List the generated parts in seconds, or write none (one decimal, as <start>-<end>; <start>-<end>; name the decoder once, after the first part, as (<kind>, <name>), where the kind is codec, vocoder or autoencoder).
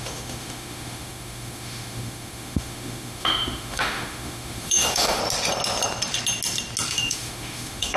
0.0-5.2 (autoencoder, DAC-VAE); 6.9-8.0